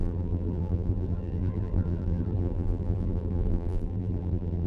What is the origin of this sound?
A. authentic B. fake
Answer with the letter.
B